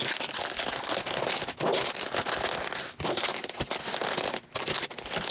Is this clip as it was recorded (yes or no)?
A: yes